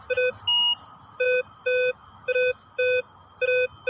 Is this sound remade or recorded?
recorded